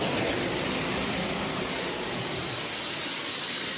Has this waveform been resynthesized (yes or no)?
no